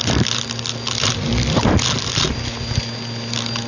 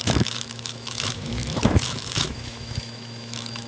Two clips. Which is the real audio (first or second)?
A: first